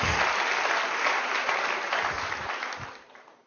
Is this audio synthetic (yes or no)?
no